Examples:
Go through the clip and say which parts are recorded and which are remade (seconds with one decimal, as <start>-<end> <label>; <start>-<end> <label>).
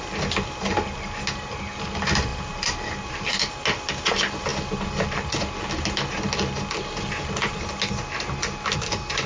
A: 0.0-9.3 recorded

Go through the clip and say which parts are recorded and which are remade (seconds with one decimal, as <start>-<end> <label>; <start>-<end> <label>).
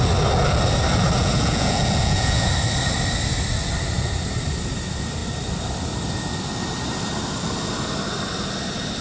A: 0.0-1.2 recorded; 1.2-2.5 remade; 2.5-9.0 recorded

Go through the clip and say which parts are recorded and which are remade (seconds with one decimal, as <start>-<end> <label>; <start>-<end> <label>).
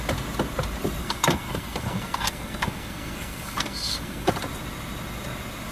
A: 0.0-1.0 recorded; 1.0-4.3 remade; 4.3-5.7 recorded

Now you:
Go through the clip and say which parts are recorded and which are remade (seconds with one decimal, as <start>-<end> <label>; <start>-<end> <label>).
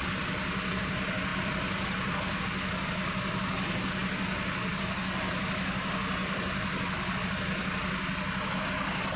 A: 0.0-1.3 recorded; 1.3-2.4 remade; 2.4-6.2 recorded; 6.2-7.1 remade; 7.1-9.2 recorded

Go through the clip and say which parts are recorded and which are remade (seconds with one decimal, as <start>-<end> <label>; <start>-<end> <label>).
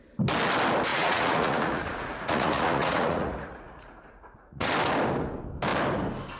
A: 0.0-0.9 recorded; 0.9-4.7 remade; 4.7-6.4 recorded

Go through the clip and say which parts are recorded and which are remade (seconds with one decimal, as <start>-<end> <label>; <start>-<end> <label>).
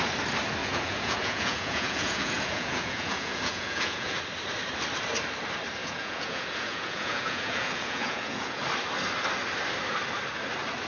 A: 0.0-0.6 recorded; 0.6-4.2 remade; 4.2-5.8 recorded; 5.8-8.6 remade; 8.6-10.9 recorded